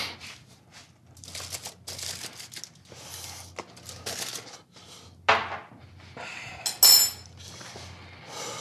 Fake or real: real